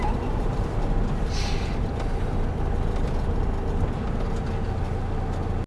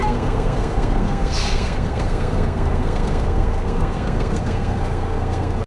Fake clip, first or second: second